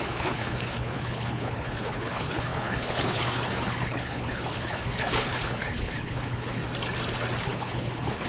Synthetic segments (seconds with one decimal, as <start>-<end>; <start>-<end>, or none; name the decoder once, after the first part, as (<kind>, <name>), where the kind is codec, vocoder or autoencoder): 0.0-6.6 (codec, HILCodec); 7.4-8.3